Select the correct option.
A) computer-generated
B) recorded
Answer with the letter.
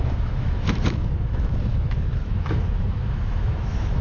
A